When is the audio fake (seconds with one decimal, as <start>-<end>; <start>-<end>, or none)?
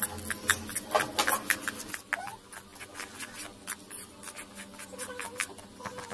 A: none